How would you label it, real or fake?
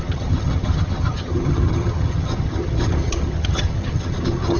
fake